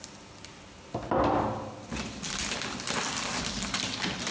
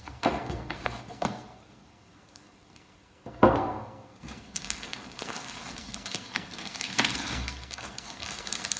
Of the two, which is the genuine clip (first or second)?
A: first